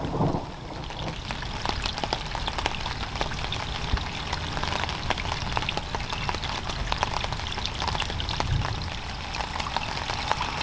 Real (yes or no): yes